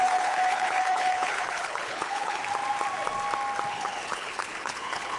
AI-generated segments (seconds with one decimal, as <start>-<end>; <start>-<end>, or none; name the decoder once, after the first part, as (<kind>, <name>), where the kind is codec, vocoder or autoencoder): 0.0-2.4 (codec, HILCodec); 3.7-5.2